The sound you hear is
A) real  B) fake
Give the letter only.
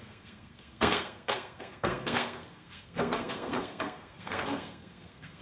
B